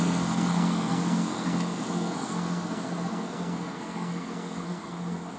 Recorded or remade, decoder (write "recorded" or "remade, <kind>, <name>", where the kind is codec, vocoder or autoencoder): remade, codec, SNAC